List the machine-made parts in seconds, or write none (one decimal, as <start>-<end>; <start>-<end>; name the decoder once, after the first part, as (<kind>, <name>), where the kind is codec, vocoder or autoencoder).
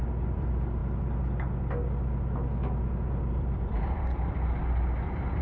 0.0-0.8 (vocoder, BigVGAN v2); 3.3-5.4